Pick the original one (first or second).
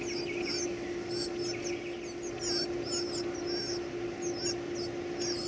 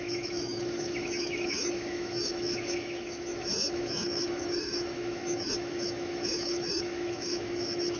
first